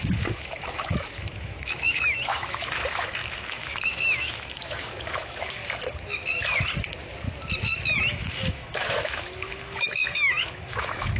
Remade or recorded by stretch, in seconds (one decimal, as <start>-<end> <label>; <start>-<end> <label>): 0.0-5.6 remade; 5.6-8.1 recorded; 8.1-11.2 remade